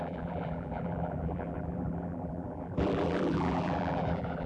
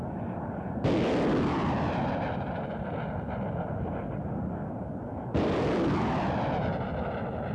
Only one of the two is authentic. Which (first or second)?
second